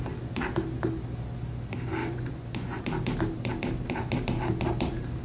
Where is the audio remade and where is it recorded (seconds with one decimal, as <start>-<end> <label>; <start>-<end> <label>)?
0.0-2.0 recorded; 2.0-2.8 remade; 2.8-5.2 recorded